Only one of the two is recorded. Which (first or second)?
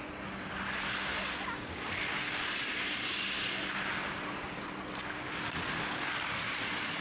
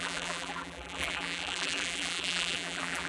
first